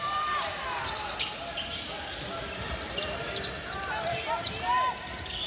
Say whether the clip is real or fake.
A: real